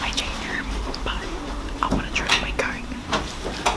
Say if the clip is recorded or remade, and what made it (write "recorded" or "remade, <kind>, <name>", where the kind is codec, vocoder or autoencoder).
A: remade, vocoder, BigVGAN v2